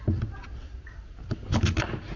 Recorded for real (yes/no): yes